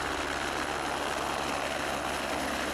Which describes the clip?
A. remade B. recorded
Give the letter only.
B